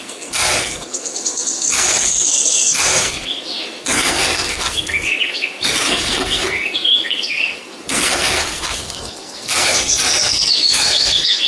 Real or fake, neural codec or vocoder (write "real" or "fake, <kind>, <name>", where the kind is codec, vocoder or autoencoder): fake, codec, SNAC